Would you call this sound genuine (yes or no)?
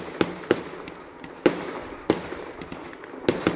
yes